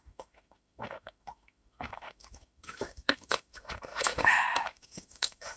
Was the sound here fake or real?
fake